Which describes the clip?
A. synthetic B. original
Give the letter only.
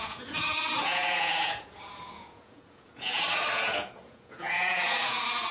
A